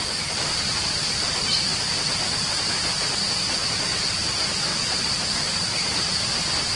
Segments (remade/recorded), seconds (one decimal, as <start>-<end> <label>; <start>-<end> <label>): 0.0-1.7 remade; 1.7-4.2 recorded; 4.2-4.7 remade; 4.7-5.6 recorded; 5.6-6.8 remade

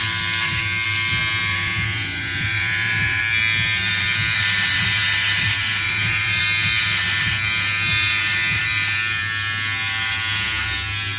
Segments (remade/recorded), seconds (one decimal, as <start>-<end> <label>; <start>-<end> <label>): 0.0-1.5 recorded; 1.5-3.2 remade; 3.2-5.7 recorded; 5.7-6.4 remade; 6.4-11.2 recorded

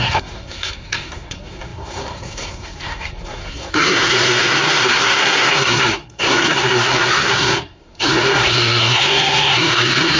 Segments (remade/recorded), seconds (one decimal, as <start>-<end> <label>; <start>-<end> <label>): 0.0-10.2 remade

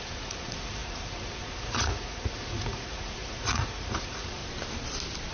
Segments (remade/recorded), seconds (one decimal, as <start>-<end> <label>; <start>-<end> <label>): 0.0-4.4 remade; 4.4-5.3 recorded

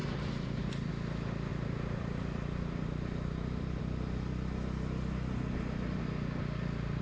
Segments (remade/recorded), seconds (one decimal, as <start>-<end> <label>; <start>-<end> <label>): 0.0-0.9 remade; 0.9-1.5 recorded; 1.5-3.8 remade; 3.8-7.0 recorded

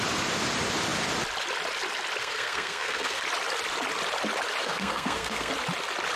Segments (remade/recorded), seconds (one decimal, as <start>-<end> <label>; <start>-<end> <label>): 0.0-2.2 recorded; 2.2-3.2 remade; 3.2-4.6 recorded; 4.6-5.5 remade; 5.5-6.2 recorded